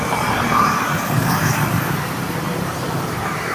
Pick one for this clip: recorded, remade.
remade